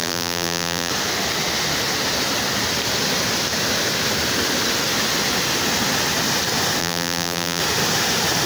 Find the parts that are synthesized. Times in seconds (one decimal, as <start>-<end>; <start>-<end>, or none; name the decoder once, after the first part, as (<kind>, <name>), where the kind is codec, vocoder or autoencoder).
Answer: 0.0-0.9 (vocoder, BigVGAN v2); 6.8-7.6